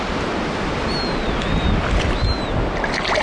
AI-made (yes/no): no